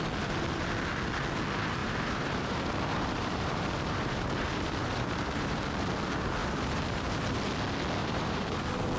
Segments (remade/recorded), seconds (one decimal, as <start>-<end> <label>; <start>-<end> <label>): 0.0-1.8 recorded; 1.8-5.6 remade; 5.6-6.4 recorded; 6.4-7.5 remade; 7.5-8.0 recorded; 8.0-8.6 remade; 8.6-9.0 recorded